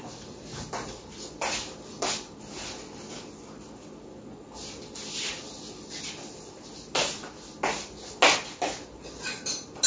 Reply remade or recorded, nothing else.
recorded